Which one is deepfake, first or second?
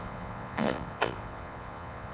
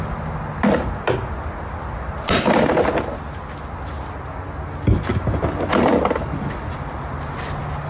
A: first